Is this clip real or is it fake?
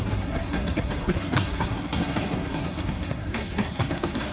fake